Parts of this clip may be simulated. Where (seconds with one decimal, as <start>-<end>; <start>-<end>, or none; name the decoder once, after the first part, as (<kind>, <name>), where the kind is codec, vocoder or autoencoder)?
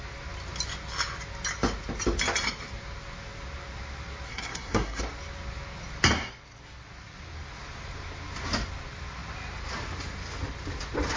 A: 4.3-5.0 (codec, SNAC)